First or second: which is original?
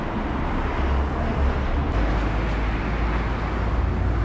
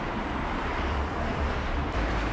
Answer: first